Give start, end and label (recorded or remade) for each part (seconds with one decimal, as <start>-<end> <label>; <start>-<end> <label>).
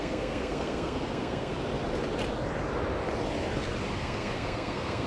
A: 0.0-1.5 remade; 1.5-4.0 recorded; 4.0-5.1 remade